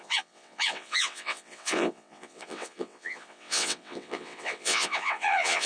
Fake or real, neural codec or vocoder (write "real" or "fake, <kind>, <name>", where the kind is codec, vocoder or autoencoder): fake, vocoder, WaveNeXt